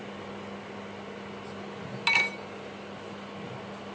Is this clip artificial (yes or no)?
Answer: no